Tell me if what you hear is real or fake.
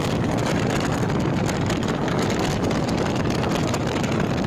real